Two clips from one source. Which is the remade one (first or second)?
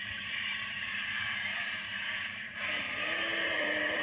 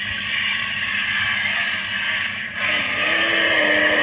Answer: first